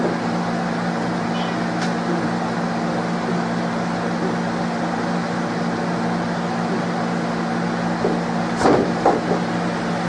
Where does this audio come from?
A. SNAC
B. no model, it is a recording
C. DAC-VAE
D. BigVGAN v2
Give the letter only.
B